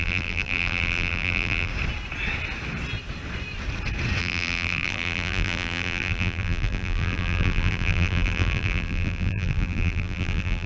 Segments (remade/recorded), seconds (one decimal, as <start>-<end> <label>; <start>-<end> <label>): 0.0-1.7 remade; 1.7-4.2 recorded; 4.2-10.7 remade